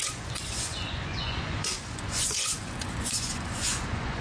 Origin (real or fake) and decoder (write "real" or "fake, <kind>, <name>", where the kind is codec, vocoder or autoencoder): fake, vocoder, Vocos